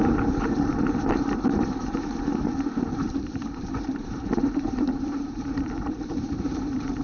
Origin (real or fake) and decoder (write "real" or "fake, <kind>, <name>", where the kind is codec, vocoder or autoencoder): fake, vocoder, BigVGAN v2